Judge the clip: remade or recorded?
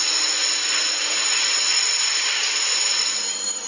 recorded